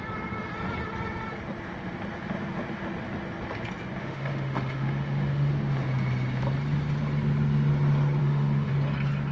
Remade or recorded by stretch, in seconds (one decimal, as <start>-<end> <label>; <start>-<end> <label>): 0.0-4.0 recorded; 4.0-5.5 remade; 5.5-8.2 recorded; 8.2-8.7 remade; 8.7-9.3 recorded